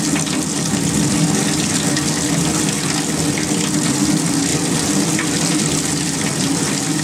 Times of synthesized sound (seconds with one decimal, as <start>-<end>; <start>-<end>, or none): 4.5-7.0